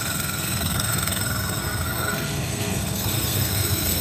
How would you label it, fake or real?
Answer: fake